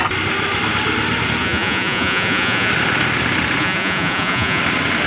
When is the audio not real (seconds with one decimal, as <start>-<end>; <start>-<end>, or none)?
1.4-2.7; 3.6-4.6